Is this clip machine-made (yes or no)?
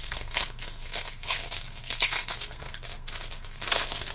yes